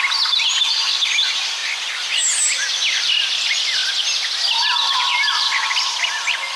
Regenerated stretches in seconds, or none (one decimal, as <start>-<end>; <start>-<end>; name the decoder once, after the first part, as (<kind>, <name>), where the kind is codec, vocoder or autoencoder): none